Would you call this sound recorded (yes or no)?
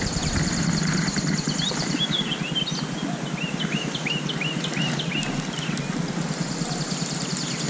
yes